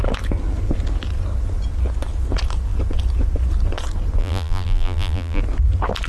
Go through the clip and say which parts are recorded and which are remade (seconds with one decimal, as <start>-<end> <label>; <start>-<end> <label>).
0.0-4.2 recorded; 4.2-5.4 remade; 5.4-6.1 recorded